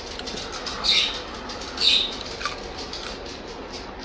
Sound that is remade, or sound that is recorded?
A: recorded